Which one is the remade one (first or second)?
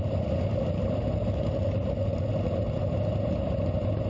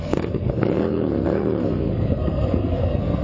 second